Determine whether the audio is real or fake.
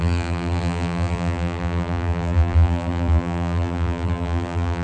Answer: fake